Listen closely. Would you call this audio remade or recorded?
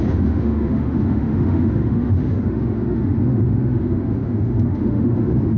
remade